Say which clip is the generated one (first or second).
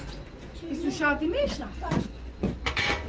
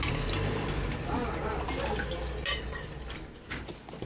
first